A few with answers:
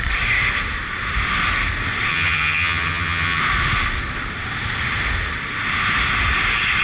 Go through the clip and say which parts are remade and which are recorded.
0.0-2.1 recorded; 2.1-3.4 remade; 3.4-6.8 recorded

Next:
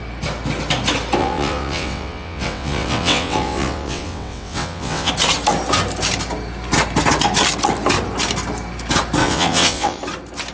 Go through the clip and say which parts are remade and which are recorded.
0.0-1.2 recorded; 1.2-5.1 remade; 5.1-9.2 recorded; 9.2-10.0 remade; 10.0-10.5 recorded

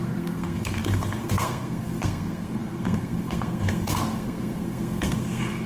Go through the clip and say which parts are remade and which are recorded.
0.0-5.7 remade

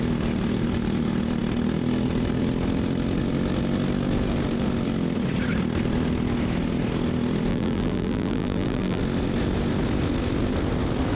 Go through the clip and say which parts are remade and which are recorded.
0.0-7.5 recorded; 7.5-9.0 remade; 9.0-11.2 recorded

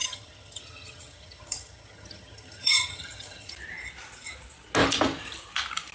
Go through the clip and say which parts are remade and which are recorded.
0.0-3.5 remade; 3.5-5.9 recorded

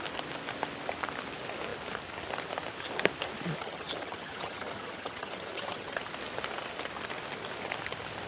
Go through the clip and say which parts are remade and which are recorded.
0.0-3.6 recorded; 3.6-6.0 remade; 6.0-8.3 recorded

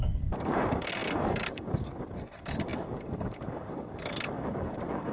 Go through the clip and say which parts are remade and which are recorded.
0.0-5.1 remade